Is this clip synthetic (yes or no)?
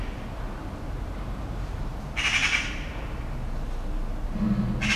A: no